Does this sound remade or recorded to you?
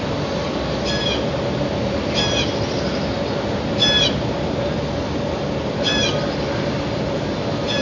recorded